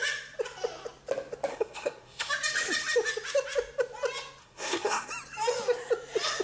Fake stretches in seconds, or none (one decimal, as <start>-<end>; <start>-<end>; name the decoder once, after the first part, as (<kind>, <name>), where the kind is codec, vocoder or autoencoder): 1.5-2.3 (codec, SNAC); 4.4-5.1